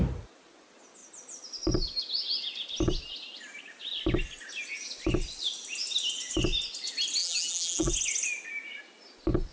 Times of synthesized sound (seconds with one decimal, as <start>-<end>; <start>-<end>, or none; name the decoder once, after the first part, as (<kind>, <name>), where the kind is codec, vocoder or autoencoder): 7.2-7.9 (vocoder, BigVGAN v2)